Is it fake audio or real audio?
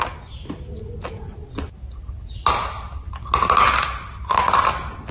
real